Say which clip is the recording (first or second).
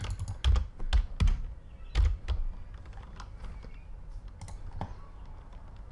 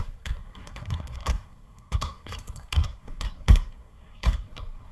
first